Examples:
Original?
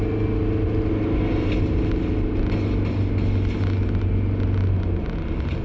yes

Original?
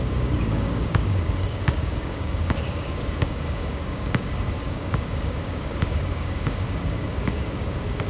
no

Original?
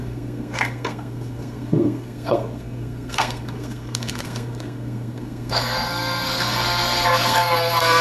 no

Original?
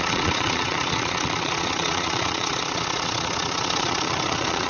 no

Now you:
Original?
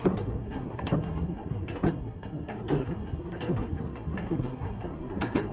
no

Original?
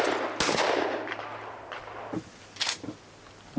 yes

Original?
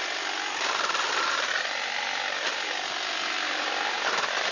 yes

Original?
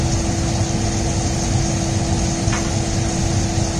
yes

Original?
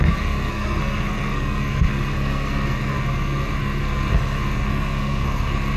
no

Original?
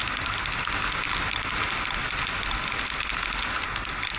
yes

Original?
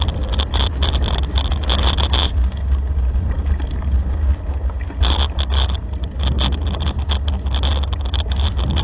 yes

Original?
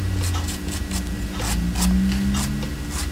yes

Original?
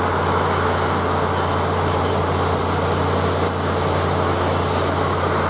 yes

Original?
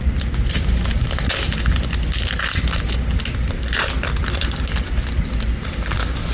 yes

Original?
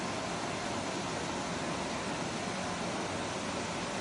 yes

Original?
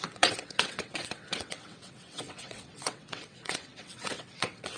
no